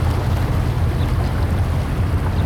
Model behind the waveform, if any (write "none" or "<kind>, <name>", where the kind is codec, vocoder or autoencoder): none